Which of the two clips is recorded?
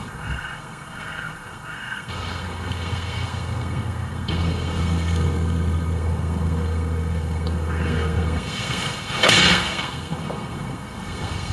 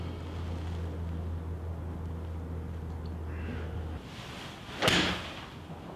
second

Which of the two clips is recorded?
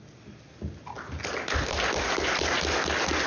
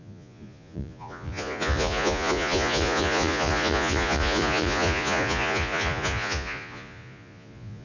first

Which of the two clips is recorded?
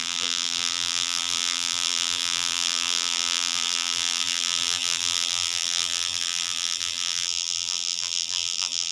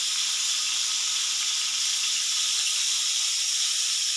second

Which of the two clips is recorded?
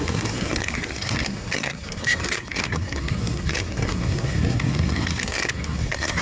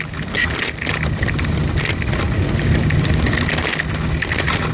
second